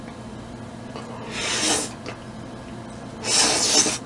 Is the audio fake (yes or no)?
no